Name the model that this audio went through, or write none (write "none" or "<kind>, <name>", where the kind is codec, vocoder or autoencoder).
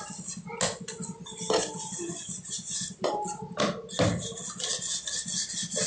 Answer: none